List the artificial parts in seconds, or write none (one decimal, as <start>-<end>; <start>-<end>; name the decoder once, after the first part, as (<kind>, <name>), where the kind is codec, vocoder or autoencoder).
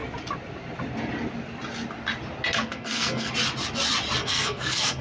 2.6-3.3 (codec, SNAC); 4.2-5.0